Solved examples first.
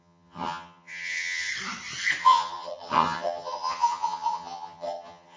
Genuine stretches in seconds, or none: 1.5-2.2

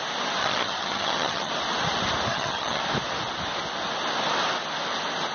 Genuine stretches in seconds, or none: 0.0-0.4; 1.5-2.3; 2.8-5.3